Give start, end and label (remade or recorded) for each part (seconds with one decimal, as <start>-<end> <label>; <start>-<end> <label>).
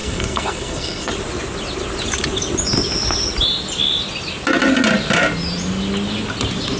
0.0-1.1 remade; 1.1-6.8 recorded